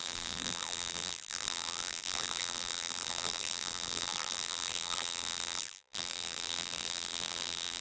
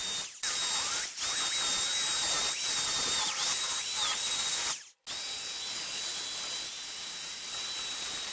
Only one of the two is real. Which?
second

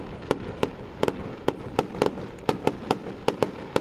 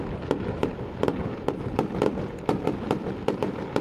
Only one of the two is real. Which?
first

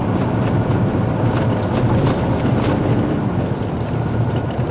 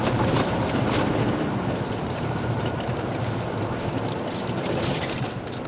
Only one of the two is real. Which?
first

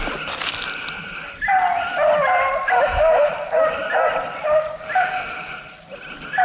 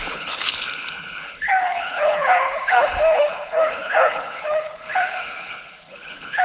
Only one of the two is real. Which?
first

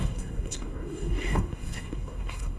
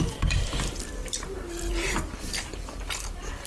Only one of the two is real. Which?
second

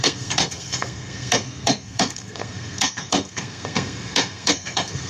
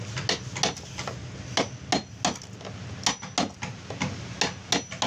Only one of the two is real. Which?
second